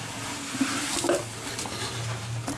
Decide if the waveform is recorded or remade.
recorded